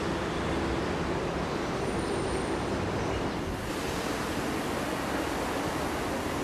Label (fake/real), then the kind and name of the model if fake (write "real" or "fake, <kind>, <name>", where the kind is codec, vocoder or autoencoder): real